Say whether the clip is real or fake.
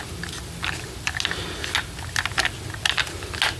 real